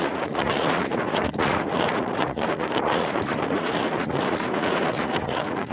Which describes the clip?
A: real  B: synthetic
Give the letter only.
B